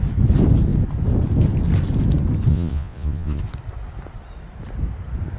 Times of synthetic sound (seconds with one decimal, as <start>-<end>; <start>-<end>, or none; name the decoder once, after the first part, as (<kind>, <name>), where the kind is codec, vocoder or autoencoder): 2.5-3.4 (vocoder, Vocos)